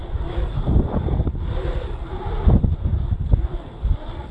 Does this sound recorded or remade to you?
remade